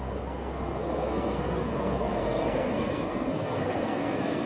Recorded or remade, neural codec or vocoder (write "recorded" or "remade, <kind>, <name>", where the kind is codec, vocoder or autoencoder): remade, codec, SNAC